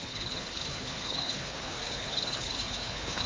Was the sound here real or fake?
fake